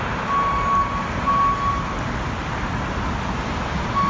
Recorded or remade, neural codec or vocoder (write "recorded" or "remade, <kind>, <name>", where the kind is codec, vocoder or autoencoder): recorded